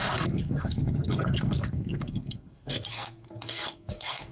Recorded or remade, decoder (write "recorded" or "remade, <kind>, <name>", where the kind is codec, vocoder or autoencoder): remade, codec, SNAC